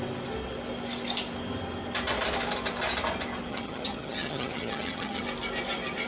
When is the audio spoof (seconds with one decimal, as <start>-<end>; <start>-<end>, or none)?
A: 3.5-5.2